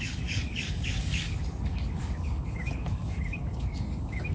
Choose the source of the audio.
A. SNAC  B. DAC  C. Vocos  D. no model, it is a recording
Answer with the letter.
B